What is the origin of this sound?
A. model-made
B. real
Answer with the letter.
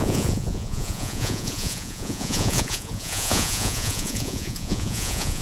A